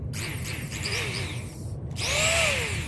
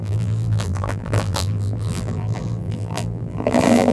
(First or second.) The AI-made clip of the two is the second